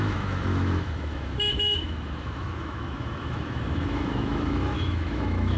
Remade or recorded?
remade